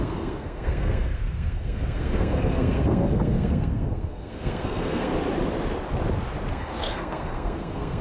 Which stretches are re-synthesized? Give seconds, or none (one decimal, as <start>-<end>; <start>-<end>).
0.0-5.1; 6.5-8.0